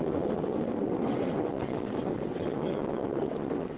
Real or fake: fake